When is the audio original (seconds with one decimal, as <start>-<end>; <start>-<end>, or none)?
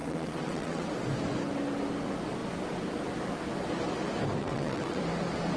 0.9-4.4; 5.0-5.6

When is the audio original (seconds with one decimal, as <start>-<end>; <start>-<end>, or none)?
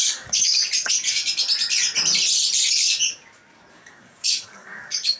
0.6-3.7